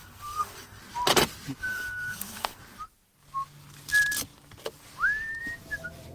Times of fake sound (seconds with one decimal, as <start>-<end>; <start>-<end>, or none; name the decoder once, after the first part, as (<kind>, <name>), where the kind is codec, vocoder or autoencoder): 0.0-0.8 (codec, SNAC); 1.7-2.6